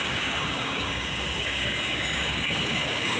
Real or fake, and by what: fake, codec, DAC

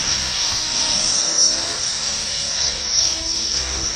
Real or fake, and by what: fake, codec, DAC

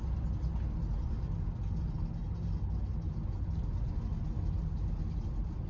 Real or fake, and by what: real